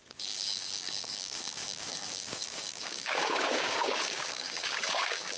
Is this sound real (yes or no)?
no